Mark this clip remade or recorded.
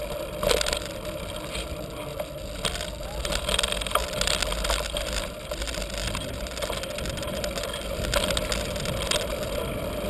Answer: recorded